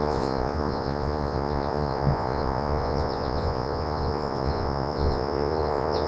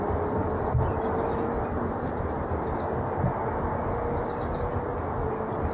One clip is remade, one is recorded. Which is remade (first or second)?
first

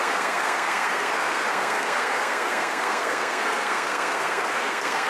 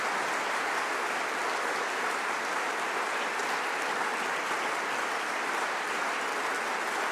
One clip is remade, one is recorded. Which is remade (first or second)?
first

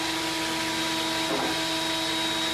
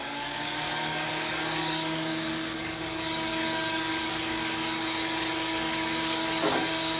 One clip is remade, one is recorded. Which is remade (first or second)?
second